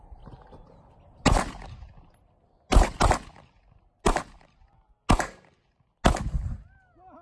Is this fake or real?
real